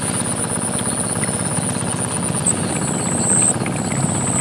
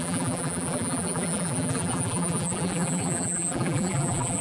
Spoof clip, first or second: second